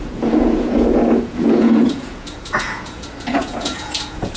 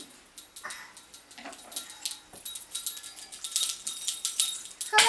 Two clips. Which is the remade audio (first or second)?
first